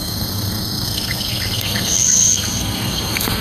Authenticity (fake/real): fake